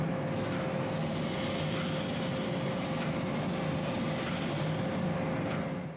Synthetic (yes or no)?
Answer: no